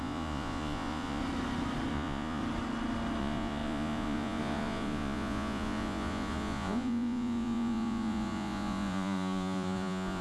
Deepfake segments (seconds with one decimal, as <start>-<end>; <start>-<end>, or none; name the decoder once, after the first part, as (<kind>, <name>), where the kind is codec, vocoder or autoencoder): 0.0-1.2 (vocoder, Vocos); 1.9-2.4; 3.2-10.2